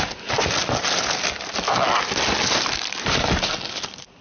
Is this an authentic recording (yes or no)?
yes